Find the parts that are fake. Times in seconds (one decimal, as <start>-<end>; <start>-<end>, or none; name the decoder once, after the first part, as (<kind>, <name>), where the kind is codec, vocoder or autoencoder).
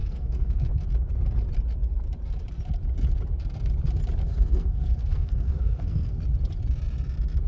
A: 0.0-0.7 (codec, SNAC); 4.2-6.2